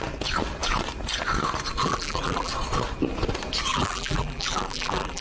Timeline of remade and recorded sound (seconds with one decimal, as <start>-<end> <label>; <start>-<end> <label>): 0.0-1.8 recorded; 1.8-2.5 remade; 2.5-3.7 recorded; 3.7-5.2 remade